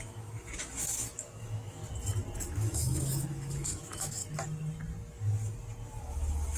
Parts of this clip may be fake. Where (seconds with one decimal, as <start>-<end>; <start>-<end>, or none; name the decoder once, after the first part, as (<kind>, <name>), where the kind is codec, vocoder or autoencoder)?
0.0-1.8 (autoencoder, DAC-VAE); 2.5-4.2; 6.0-6.6